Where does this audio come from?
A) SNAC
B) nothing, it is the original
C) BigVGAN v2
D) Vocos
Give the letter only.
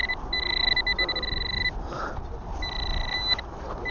B